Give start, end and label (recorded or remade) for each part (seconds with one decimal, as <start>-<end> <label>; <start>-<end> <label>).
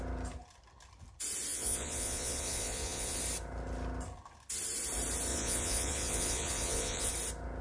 0.0-1.5 recorded; 1.5-3.2 remade; 3.2-5.3 recorded; 5.3-7.1 remade; 7.1-7.6 recorded